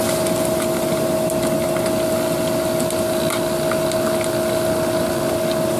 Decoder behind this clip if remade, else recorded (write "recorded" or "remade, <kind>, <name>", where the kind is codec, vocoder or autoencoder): recorded